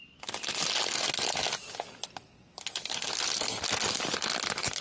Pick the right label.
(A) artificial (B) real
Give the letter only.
B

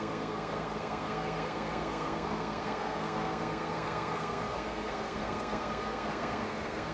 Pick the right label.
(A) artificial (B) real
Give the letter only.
A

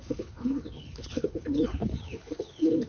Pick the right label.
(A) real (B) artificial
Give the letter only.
B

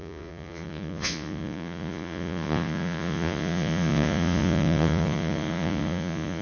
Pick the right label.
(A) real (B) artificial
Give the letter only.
B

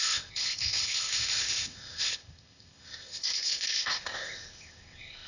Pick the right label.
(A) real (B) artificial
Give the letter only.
B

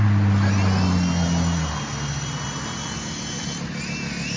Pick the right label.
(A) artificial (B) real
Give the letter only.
B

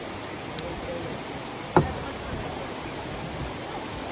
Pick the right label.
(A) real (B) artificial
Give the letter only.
A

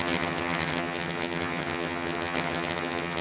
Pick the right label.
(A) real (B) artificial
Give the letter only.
B